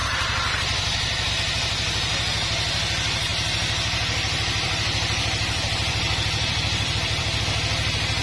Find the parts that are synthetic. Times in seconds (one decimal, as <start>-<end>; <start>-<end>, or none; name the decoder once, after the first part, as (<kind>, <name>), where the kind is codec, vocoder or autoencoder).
0.0-1.3 (vocoder, BigVGAN v2); 3.3-7.4